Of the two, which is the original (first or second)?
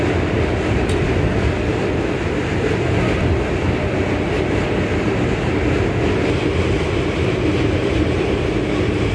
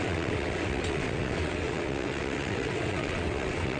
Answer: first